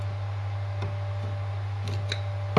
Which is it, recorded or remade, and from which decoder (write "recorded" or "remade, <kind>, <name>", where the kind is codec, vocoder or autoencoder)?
recorded